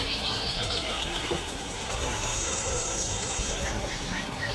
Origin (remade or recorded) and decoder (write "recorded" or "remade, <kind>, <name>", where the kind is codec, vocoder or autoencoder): remade, codec, SNAC